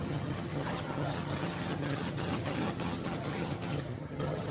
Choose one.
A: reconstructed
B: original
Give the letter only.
A